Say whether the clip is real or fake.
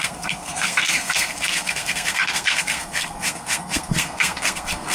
fake